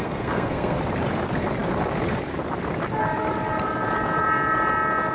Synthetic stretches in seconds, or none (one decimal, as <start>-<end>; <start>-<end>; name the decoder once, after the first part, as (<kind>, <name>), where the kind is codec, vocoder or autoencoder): 0.0-0.8 (codec, SNAC)